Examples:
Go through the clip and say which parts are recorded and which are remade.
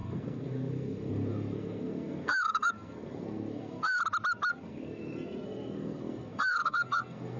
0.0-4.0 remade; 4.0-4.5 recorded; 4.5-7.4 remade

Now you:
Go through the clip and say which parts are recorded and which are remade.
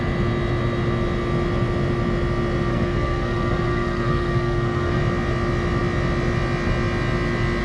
0.0-2.7 recorded; 2.7-5.0 remade; 5.0-7.6 recorded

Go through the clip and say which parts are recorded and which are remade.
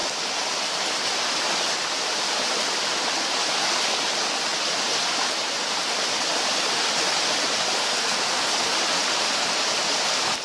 0.0-4.0 remade; 4.0-10.4 recorded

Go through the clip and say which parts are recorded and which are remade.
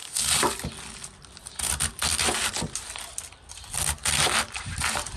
0.0-1.9 recorded; 1.9-5.2 remade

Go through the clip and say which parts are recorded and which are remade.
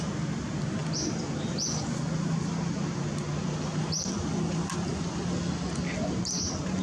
0.0-6.8 recorded